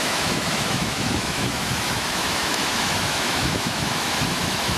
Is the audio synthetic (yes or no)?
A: yes